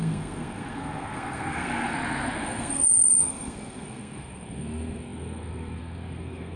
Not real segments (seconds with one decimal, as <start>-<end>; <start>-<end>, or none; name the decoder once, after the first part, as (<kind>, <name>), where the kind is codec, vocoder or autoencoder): 0.0-6.6 (codec, SNAC)